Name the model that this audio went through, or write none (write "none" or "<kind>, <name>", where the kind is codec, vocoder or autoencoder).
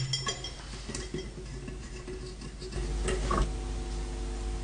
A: none